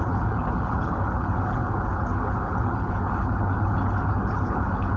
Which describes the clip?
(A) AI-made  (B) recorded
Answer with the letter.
A